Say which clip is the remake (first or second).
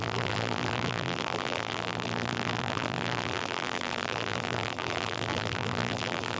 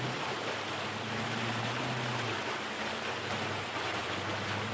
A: first